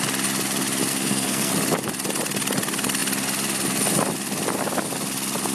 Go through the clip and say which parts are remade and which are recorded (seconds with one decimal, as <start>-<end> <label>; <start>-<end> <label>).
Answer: 0.0-0.9 recorded; 0.9-1.5 remade; 1.5-5.5 recorded